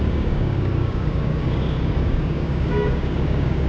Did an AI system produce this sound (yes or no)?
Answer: yes